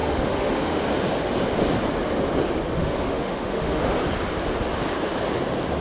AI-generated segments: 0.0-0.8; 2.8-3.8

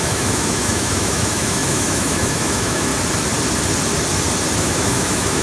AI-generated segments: 0.0-2.9; 4.6-5.4